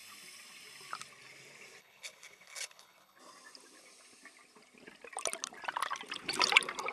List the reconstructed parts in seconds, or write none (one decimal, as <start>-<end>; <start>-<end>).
1.8-3.2